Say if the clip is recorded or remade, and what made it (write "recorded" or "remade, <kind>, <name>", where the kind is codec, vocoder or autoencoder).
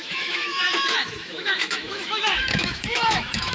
remade, autoencoder, DAC-VAE